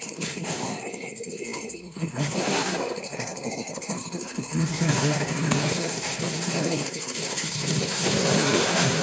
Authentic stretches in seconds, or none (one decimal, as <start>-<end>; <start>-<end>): none